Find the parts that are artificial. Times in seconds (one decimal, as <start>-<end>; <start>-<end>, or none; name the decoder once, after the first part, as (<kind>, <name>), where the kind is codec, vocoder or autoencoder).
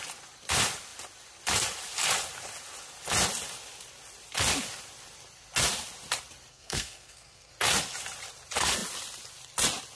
6.5-7.5 (codec, SNAC)